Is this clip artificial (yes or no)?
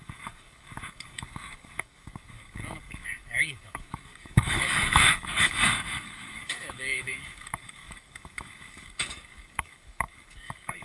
yes